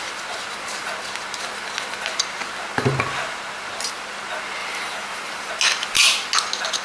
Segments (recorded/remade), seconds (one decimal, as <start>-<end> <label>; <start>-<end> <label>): 0.0-4.6 recorded; 4.6-5.5 remade; 5.5-6.8 recorded